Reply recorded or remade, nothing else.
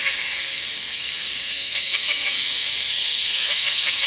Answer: remade